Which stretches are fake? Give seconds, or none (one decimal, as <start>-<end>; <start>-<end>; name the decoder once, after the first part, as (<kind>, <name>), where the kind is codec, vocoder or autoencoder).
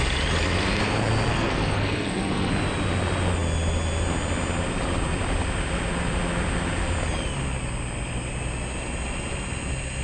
1.3-2.5 (codec, SNAC)